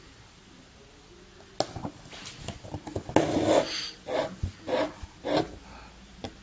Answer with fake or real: real